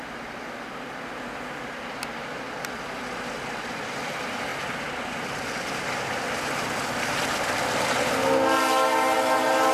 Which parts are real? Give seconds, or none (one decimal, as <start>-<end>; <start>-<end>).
0.0-9.7